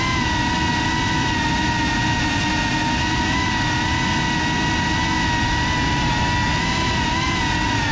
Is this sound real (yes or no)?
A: yes